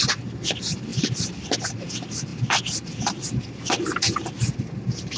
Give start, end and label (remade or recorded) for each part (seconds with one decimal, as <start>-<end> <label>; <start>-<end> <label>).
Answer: 0.0-0.9 recorded; 0.9-1.8 remade; 1.8-5.2 recorded